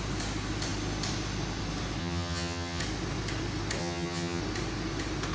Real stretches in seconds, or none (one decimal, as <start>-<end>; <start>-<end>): 0.0-2.0; 2.8-3.8; 4.4-5.3